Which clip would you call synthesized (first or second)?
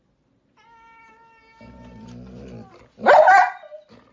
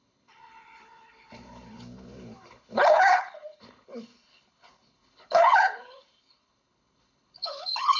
second